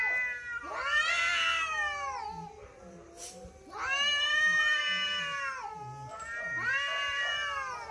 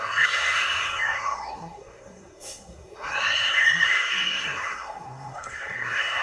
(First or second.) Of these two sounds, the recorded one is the first